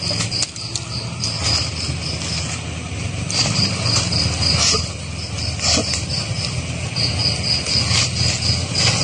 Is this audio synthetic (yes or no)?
no